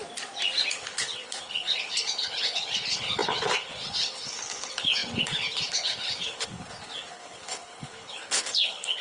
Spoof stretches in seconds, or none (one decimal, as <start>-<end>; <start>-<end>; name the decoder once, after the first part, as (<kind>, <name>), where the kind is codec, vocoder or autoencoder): 0.7-9.0 (codec, HILCodec)